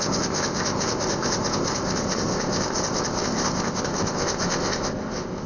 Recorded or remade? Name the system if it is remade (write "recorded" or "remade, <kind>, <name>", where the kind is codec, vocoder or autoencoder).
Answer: remade, codec, ZipCodec